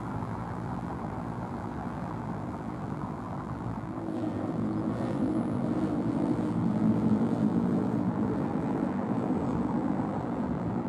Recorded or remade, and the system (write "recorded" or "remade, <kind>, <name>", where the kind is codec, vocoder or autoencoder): remade, vocoder, BigVGAN v2